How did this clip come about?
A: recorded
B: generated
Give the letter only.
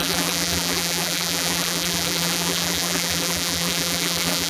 B